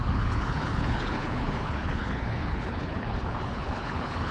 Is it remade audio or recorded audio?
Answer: remade